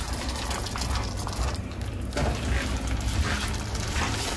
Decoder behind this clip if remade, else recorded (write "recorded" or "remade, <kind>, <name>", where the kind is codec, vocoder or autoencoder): recorded